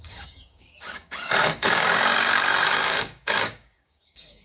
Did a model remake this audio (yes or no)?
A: yes